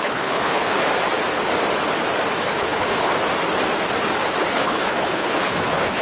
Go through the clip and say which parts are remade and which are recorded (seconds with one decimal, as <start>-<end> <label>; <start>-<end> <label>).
0.0-0.8 remade; 0.8-2.4 recorded; 2.4-3.1 remade; 3.1-4.4 recorded; 4.4-6.0 remade